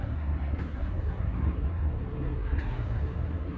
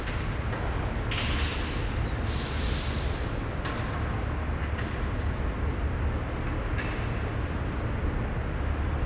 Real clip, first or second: second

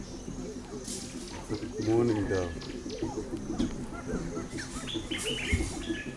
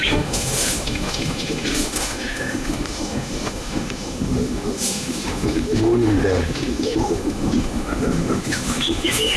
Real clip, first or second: first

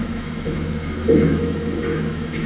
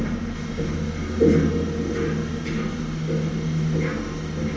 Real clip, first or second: second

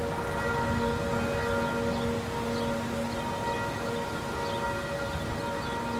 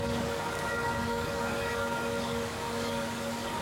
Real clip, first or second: first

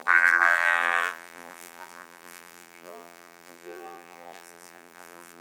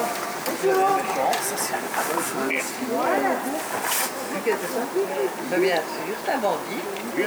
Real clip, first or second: second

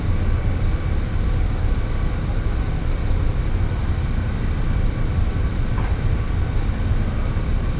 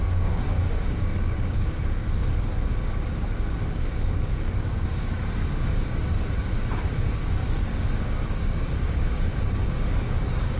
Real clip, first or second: first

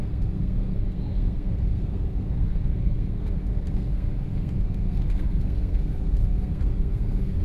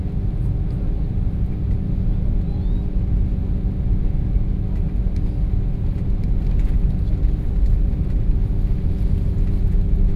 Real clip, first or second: second